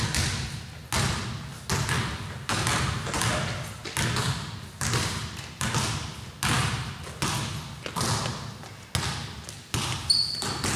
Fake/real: real